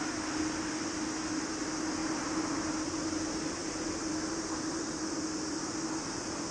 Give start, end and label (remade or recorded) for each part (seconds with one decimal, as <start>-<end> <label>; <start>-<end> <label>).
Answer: 0.0-6.5 recorded